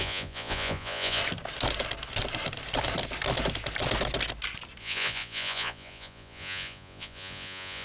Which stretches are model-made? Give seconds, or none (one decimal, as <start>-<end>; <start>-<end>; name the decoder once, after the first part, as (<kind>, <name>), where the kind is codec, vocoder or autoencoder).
0.0-1.2 (vocoder, Vocos); 4.8-7.8